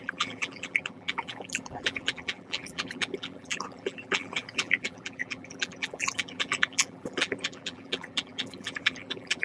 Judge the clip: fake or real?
fake